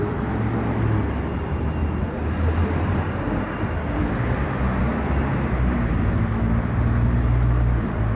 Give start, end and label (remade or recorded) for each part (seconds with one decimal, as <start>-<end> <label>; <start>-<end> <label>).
0.0-8.1 remade